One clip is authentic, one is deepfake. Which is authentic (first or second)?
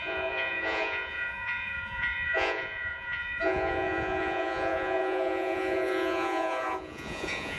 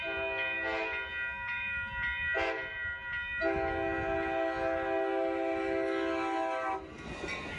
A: second